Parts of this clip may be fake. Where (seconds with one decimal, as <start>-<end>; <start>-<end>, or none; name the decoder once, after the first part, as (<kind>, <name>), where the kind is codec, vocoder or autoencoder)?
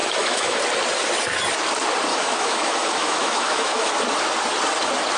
0.0-0.6 (autoencoder, DAC-VAE); 2.1-3.9